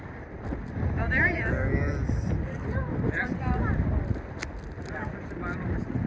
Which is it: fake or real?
real